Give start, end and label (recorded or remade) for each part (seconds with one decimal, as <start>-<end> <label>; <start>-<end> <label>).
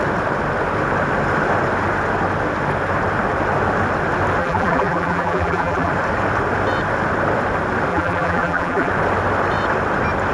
0.0-4.4 recorded; 4.4-5.9 remade; 5.9-7.9 recorded; 7.9-8.9 remade; 8.9-10.3 recorded